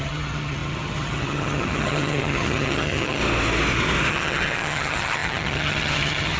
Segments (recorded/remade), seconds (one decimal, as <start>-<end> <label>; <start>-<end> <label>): 0.0-3.2 remade; 3.2-4.1 recorded; 4.1-6.4 remade